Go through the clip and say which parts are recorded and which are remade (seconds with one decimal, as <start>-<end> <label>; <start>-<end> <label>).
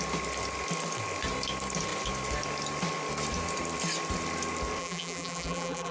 0.0-4.8 recorded; 4.8-5.9 remade